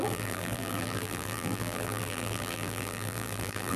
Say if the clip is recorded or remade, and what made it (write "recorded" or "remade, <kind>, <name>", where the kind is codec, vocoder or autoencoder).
remade, vocoder, BigVGAN v2